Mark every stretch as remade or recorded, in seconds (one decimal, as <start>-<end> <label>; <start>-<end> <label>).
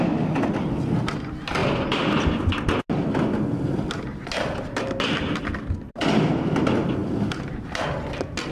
0.0-8.5 recorded